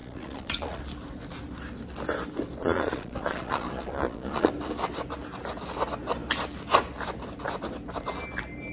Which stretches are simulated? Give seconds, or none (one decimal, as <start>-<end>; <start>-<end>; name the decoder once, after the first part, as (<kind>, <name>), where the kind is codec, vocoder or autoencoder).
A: 0.0-0.8 (vocoder, Vocos); 2.6-4.5